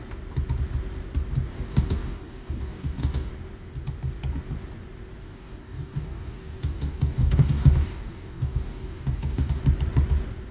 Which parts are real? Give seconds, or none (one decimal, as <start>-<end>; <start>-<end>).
0.0-1.5; 3.3-5.2; 9.6-10.5

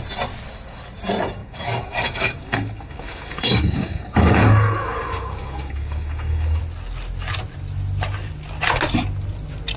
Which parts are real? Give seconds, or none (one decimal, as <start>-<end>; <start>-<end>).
0.0-1.4; 6.6-9.8

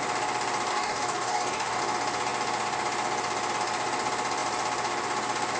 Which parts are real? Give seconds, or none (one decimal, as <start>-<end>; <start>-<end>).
0.0-0.7; 1.8-5.6

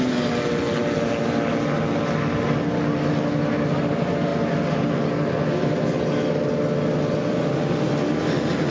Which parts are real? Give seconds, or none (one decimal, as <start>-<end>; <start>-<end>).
0.0-8.7

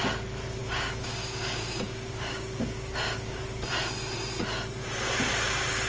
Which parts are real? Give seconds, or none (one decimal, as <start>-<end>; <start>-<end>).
0.0-0.6; 3.4-5.9

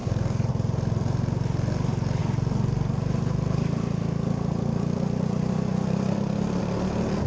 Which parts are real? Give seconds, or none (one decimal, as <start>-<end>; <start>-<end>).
0.5-7.3